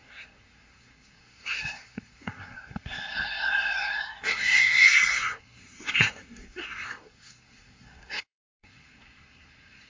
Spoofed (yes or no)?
yes